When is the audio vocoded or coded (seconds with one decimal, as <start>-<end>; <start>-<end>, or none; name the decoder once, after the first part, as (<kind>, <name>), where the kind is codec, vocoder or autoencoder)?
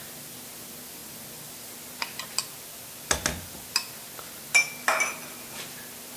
none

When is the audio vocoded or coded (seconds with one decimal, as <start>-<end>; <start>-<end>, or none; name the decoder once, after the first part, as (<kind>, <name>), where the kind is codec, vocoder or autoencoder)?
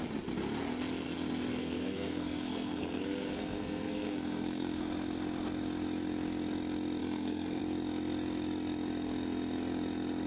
1.6-4.8 (codec, SNAC); 7.0-7.6